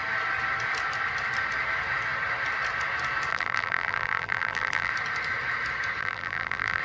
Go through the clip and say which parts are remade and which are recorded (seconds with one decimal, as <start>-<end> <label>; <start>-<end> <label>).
0.0-3.3 recorded; 3.3-4.9 remade; 4.9-6.0 recorded; 6.0-6.8 remade